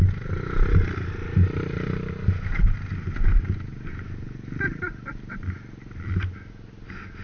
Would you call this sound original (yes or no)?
yes